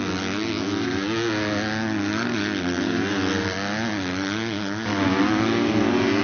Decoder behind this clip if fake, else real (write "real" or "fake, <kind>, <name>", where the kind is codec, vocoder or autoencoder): real